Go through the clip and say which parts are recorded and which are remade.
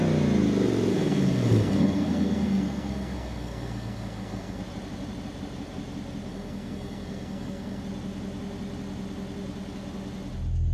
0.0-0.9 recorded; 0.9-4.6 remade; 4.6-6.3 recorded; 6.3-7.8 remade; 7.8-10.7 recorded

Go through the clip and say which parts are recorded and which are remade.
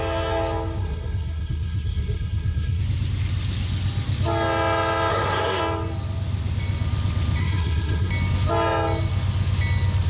0.0-0.8 recorded; 0.8-2.8 remade; 2.8-5.1 recorded; 5.1-5.6 remade; 5.6-7.4 recorded; 7.4-8.1 remade; 8.1-10.1 recorded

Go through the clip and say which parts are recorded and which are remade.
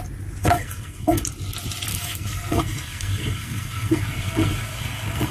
0.0-0.4 recorded; 0.4-1.2 remade; 1.2-1.9 recorded; 1.9-5.3 remade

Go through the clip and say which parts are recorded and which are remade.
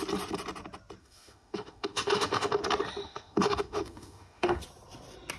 0.0-1.0 recorded; 1.0-2.6 remade; 2.6-3.0 recorded; 3.0-4.6 remade; 4.6-5.4 recorded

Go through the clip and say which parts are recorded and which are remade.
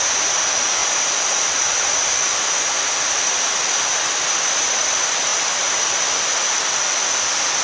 0.0-7.6 recorded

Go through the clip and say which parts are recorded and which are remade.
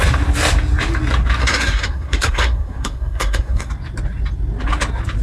0.0-1.4 recorded; 1.4-3.7 remade; 3.7-5.2 recorded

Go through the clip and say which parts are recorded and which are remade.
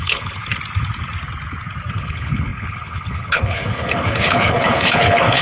0.0-0.4 remade; 0.4-1.9 recorded; 1.9-5.4 remade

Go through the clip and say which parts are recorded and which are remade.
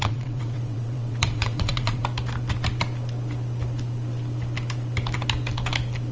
0.0-2.0 remade; 2.0-6.1 recorded